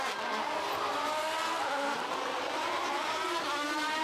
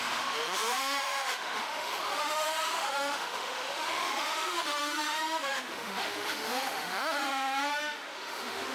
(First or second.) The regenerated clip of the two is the second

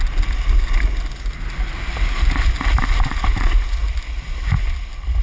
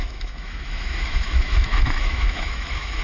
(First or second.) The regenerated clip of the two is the second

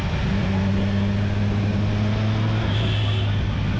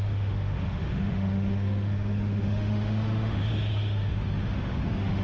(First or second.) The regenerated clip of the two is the second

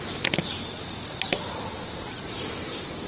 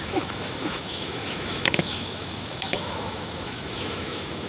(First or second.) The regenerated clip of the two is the second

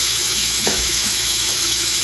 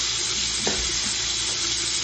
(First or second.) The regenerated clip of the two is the first